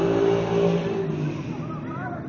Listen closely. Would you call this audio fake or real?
real